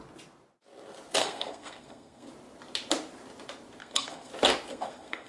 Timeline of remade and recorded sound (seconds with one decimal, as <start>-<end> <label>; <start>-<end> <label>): 0.0-1.2 recorded; 1.2-2.3 remade; 2.3-3.8 recorded; 3.8-4.3 remade; 4.3-4.7 recorded; 4.7-5.3 remade